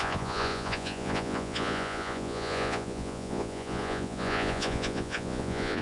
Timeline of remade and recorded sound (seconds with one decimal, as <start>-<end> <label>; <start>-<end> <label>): 0.0-5.8 remade